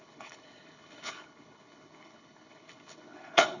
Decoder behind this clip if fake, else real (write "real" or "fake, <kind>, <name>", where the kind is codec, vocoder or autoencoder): fake, codec, HILCodec